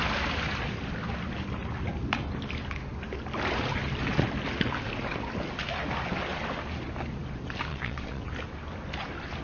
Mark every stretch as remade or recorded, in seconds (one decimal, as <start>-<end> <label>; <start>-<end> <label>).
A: 0.0-7.7 recorded; 7.7-8.3 remade; 8.3-9.4 recorded